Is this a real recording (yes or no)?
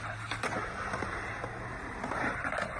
yes